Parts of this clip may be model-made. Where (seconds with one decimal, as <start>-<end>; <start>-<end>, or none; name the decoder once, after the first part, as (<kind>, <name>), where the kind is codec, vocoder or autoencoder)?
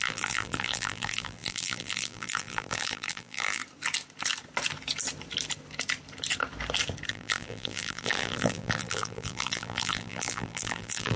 0.0-3.6 (vocoder, BigVGAN v2); 7.1-11.2